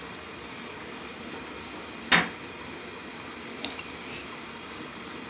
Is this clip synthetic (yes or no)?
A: no